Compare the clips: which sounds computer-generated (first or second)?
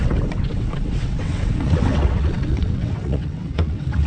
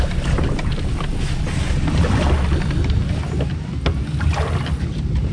first